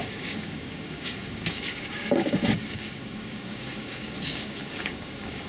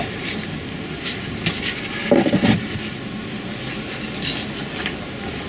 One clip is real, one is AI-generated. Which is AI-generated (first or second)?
first